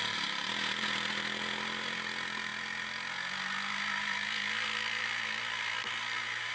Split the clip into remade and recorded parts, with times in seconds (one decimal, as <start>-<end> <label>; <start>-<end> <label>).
0.0-6.5 recorded